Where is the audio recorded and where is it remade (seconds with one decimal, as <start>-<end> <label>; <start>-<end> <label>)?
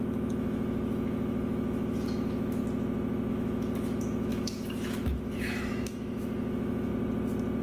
0.0-2.6 remade; 2.6-3.3 recorded; 3.3-6.9 remade; 6.9-7.6 recorded